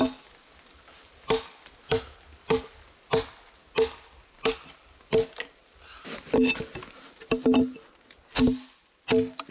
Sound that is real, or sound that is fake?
real